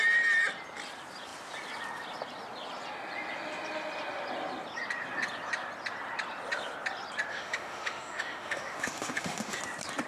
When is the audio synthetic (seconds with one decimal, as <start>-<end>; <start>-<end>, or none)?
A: 7.3-9.6